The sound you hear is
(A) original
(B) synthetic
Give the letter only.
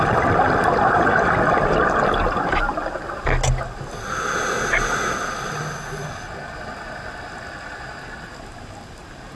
A